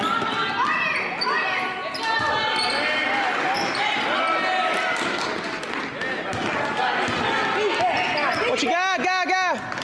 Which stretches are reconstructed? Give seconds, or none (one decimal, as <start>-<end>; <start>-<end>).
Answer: none